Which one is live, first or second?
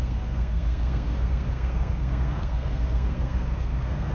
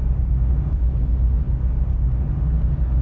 second